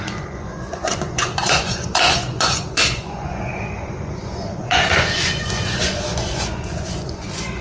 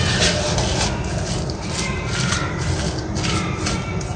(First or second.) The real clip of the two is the second